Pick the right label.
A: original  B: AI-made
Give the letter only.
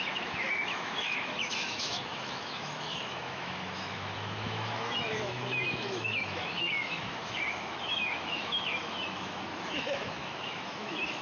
B